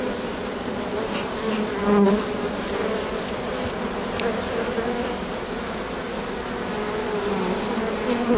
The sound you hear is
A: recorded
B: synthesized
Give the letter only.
A